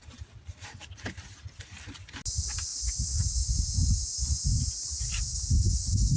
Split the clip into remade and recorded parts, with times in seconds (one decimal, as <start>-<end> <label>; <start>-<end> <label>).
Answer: 0.0-6.2 recorded